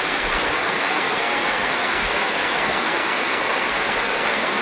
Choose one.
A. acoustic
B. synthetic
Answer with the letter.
B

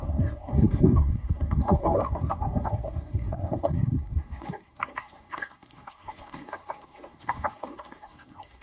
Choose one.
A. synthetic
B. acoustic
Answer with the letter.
A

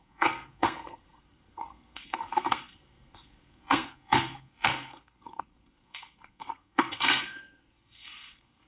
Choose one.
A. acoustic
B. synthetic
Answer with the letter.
B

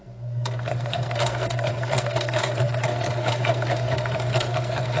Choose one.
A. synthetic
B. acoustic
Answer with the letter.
A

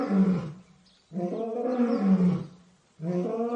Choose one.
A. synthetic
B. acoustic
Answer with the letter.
B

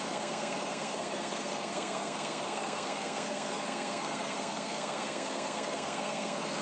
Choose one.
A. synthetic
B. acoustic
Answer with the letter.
A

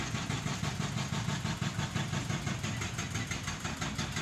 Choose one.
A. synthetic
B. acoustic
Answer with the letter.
B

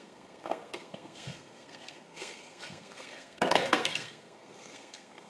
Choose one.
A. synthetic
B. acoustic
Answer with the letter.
A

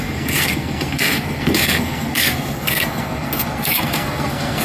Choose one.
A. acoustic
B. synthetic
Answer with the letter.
B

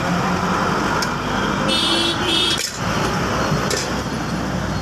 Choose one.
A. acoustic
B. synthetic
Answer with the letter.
A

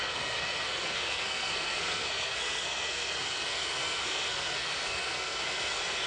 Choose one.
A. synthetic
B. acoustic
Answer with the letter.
A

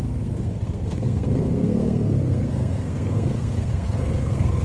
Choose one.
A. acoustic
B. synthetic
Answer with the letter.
B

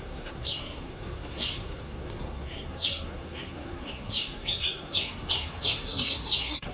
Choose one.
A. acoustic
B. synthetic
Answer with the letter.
B